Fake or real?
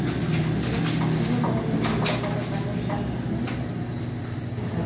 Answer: real